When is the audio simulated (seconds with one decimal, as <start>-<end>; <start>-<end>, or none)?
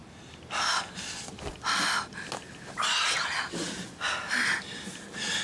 none